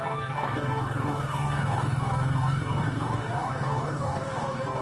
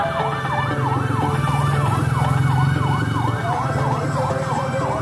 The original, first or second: second